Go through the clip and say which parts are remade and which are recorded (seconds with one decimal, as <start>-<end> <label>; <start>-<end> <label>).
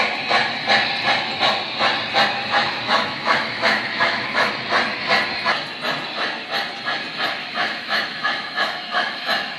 0.0-2.6 recorded; 2.6-4.5 remade; 4.5-7.4 recorded; 7.4-9.6 remade